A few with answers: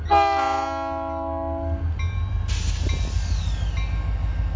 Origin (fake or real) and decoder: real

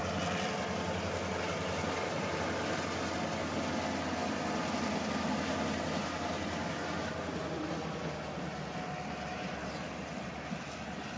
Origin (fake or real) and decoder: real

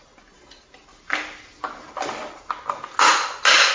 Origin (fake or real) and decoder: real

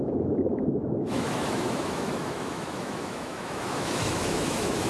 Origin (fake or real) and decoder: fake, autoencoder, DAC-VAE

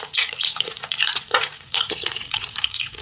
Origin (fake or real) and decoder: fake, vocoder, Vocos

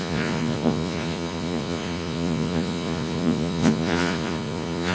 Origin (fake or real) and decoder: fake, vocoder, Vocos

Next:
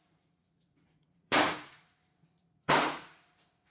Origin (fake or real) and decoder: fake, vocoder, Vocos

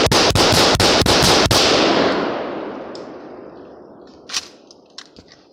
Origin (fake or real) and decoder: real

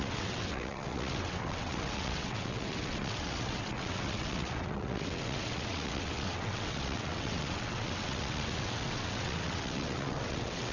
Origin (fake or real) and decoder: fake, vocoder, WaveNeXt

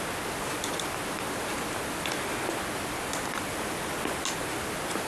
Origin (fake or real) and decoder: real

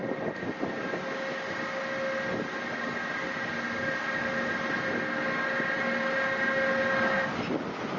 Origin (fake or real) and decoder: real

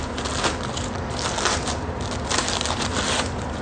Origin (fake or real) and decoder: real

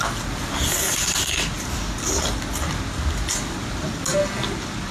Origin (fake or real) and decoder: real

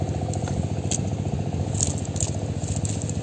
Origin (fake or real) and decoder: real